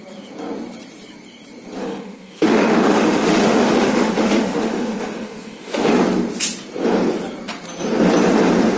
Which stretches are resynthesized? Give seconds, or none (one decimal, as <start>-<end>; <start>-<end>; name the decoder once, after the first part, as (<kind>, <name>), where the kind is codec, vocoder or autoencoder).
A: 1.8-5.9 (autoencoder, DAC-VAE)